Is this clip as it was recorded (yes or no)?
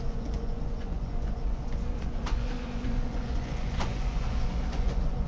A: no